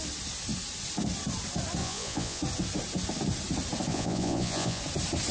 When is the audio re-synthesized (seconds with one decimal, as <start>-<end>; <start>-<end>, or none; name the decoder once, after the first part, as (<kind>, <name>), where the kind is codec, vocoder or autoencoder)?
1.8-2.4 (vocoder, Vocos); 3.9-4.8